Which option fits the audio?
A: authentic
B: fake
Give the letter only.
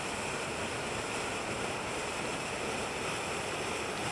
B